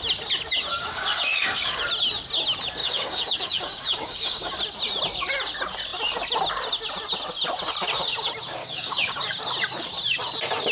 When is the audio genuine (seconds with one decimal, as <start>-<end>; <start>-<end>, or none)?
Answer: 0.0-0.7; 1.8-2.8; 4.5-8.6; 9.1-10.7